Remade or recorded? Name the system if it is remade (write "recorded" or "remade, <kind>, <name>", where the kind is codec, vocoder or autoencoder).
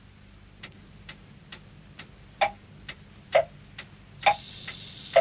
recorded